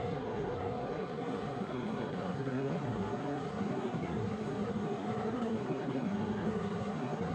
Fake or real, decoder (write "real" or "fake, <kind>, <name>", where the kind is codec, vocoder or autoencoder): fake, codec, SNAC